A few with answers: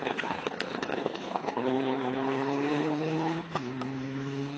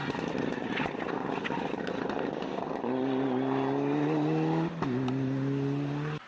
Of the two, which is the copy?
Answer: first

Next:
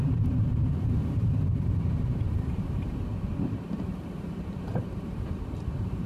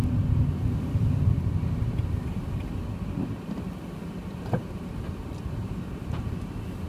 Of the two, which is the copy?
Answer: first